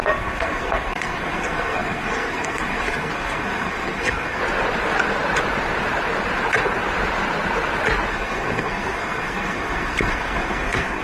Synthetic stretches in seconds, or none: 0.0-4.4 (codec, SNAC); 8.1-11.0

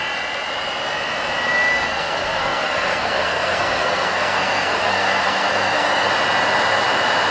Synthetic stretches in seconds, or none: 1.7-6.1 (codec, SNAC)

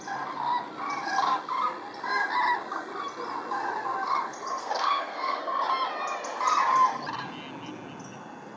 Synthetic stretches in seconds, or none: 4.6-5.4 (codec, SNAC)

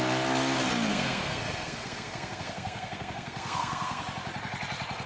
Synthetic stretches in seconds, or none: 0.9-4.0 (codec, SNAC)

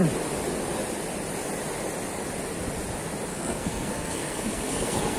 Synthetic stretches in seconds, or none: 3.3-5.2 (codec, SNAC)

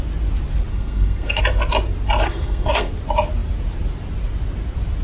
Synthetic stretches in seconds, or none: 0.7-1.4 (codec, SNAC); 2.2-2.9

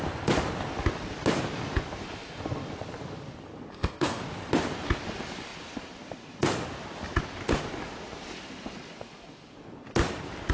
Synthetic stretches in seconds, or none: 3.7-4.2 (codec, SNAC)